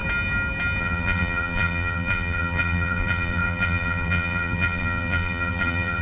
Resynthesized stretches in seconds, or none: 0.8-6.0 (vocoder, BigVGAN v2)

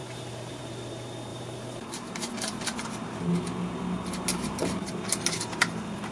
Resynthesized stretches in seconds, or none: 0.0-0.6 (vocoder, BigVGAN v2); 1.3-2.3; 4.3-4.9

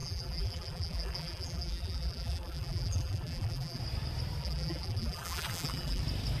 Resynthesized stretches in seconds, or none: 0.0-3.8 (vocoder, BigVGAN v2); 4.4-6.0

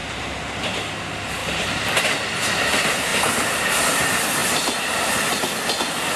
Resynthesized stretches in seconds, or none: 0.6-6.2 (vocoder, BigVGAN v2)

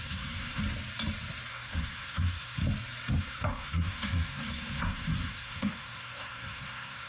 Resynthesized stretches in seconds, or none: 0.0-0.6 (codec, SNAC); 1.5-2.6; 3.2-7.1

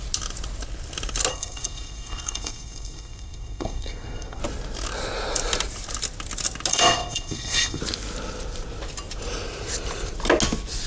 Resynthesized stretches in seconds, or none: 1.3-4.4 (codec, SNAC); 6.7-7.8

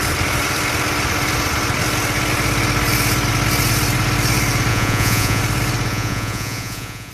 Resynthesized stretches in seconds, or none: 4.7-5.4 (vocoder, Vocos); 5.9-7.1

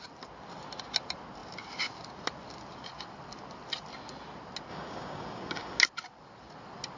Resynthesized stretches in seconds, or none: 4.7-5.8 (codec, DAC)